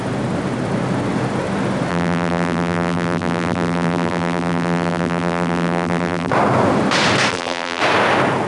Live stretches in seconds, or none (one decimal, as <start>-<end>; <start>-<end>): 0.0-1.9; 6.3-7.3; 7.8-8.5